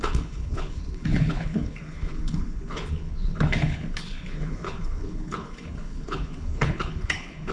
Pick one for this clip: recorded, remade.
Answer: remade